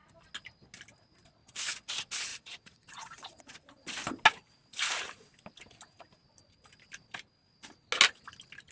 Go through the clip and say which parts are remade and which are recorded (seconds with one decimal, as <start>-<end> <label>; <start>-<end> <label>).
0.0-2.3 recorded; 2.3-3.4 remade; 3.4-8.7 recorded